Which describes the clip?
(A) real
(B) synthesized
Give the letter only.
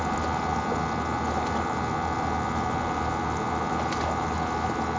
A